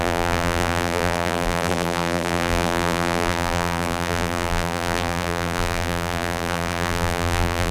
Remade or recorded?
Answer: remade